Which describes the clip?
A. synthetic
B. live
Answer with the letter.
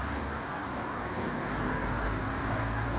A